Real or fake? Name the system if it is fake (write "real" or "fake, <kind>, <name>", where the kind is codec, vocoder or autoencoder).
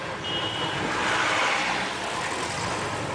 real